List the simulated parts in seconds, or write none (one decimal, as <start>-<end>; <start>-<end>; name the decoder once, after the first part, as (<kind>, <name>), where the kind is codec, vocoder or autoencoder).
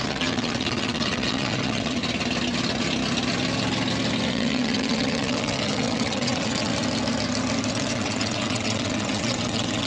0.0-2.0 (vocoder, WaveNeXt); 4.3-6.7; 7.7-9.9